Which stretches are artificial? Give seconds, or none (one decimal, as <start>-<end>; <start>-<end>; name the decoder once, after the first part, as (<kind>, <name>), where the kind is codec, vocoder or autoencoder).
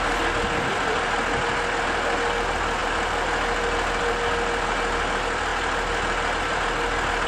none